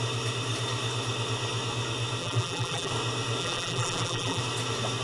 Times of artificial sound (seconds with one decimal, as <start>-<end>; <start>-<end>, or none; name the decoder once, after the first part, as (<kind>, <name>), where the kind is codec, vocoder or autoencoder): 2.2-2.9 (vocoder, BigVGAN v2); 3.4-4.4